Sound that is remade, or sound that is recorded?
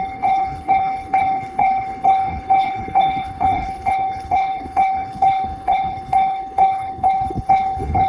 remade